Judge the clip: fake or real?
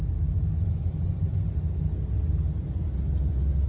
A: real